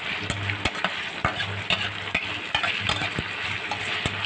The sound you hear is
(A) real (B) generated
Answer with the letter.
A